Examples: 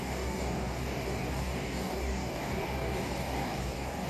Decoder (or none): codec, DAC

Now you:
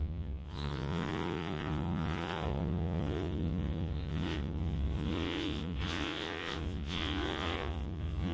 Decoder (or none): vocoder, Vocos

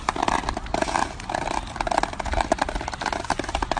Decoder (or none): none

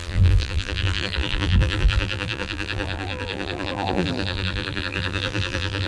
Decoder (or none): vocoder, BigVGAN v2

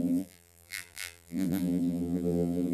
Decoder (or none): vocoder, BigVGAN v2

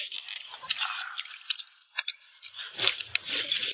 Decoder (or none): none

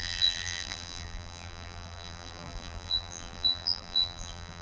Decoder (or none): vocoder, BigVGAN v2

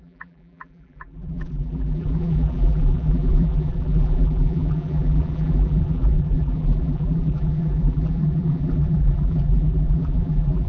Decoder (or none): vocoder, BigVGAN v2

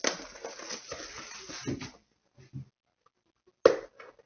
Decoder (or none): none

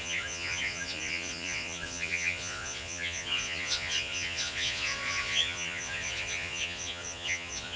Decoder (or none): vocoder, Vocos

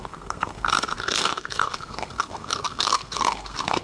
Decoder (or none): codec, SNAC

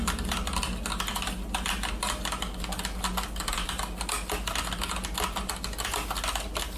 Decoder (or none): none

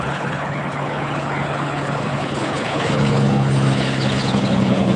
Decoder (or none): codec, HILCodec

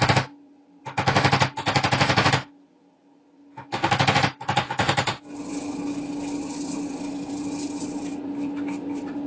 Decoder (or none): none